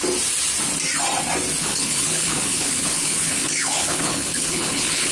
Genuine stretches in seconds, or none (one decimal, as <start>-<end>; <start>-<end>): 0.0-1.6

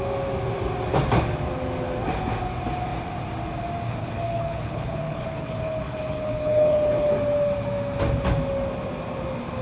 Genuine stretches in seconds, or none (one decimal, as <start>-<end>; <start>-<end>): 0.0-4.0; 7.1-9.6

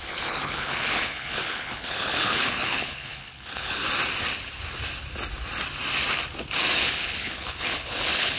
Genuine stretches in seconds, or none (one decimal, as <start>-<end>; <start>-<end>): 3.8-6.8

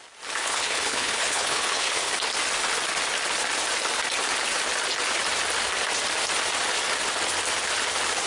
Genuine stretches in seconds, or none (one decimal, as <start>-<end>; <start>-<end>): 0.0-0.4; 2.1-8.3